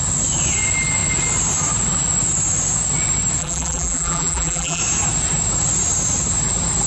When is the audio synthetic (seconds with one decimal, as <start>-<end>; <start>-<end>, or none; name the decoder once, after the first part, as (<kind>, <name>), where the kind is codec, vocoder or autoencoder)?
3.4-4.8 (vocoder, BigVGAN v2)